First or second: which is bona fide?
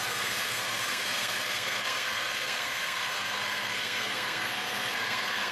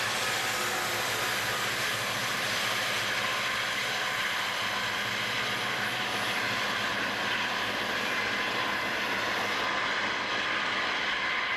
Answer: second